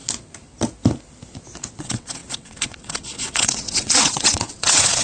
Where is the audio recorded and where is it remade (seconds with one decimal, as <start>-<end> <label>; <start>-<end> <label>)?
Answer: 0.0-1.8 recorded; 1.8-5.0 remade